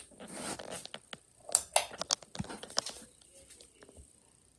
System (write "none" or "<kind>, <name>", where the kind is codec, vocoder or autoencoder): none